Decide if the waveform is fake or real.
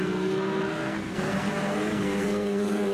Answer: fake